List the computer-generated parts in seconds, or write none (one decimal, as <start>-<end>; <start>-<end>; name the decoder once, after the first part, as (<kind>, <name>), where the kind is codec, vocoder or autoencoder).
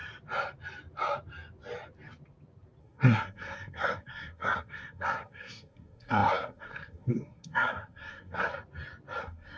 2.8-8.5 (codec, SNAC); 9.2-9.6